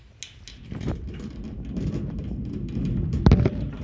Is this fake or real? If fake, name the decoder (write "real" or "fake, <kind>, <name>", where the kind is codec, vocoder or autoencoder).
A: real